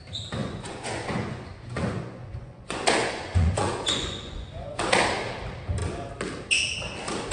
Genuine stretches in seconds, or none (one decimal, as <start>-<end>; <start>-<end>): 0.0-0.4; 4.8-7.3